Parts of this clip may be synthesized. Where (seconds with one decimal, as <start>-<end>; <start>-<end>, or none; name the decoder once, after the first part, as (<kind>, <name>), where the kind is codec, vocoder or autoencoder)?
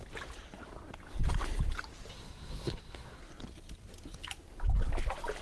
2.1-3.2 (codec, SNAC)